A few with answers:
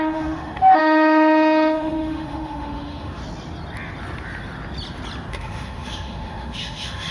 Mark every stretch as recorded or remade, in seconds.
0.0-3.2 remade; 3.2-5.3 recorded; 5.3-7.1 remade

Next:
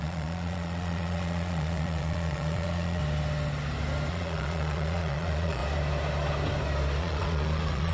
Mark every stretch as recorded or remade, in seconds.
0.0-3.0 remade; 3.0-4.1 recorded; 4.1-5.6 remade; 5.6-7.0 recorded; 7.0-7.9 remade

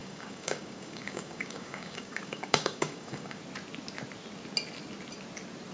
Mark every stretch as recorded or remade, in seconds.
0.0-3.4 remade; 3.4-5.7 recorded

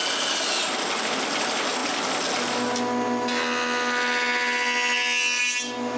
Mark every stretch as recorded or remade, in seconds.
0.0-6.0 recorded

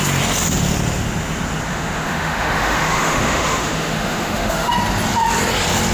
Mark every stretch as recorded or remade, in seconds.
0.0-1.7 recorded; 1.7-4.7 remade; 4.7-5.9 recorded

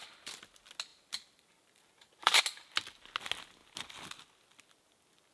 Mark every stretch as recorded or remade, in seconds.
0.0-0.9 recorded; 0.9-2.4 remade; 2.4-5.3 recorded

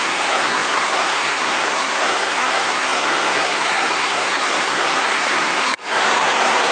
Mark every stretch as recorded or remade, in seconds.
0.0-6.7 remade